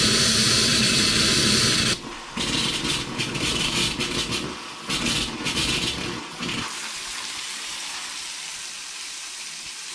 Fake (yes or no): yes